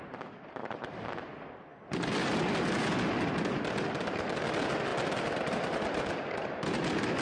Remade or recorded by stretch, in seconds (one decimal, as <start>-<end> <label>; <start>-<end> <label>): 0.0-7.2 recorded